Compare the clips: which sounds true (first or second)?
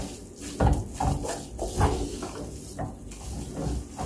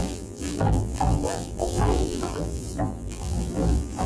first